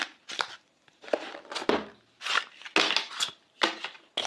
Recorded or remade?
recorded